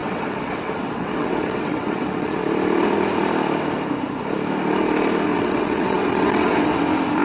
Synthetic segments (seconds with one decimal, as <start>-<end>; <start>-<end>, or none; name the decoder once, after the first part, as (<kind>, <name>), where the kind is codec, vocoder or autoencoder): 0.0-2.4 (vocoder, WaveNeXt); 5.3-6.8